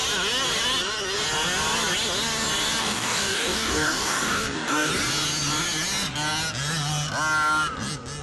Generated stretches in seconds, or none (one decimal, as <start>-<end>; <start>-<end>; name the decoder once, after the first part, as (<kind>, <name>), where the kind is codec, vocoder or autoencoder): 2.8-4.9 (codec, DAC)

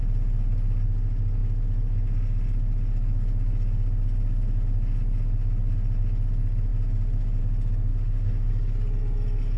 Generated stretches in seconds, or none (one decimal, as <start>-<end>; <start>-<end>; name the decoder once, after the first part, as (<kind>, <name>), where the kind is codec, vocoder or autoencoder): 7.9-8.5 (codec, HILCodec)